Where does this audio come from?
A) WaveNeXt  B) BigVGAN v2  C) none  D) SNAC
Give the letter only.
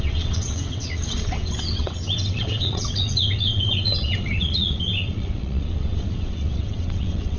A